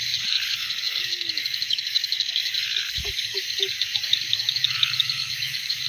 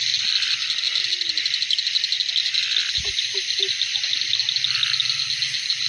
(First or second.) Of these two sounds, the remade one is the first